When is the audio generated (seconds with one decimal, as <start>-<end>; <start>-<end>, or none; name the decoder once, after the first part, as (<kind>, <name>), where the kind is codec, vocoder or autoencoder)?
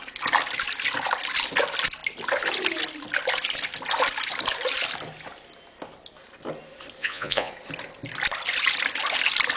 7.0-7.5 (vocoder, Vocos)